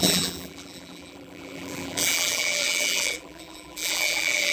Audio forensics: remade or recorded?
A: remade